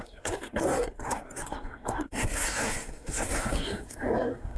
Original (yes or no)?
no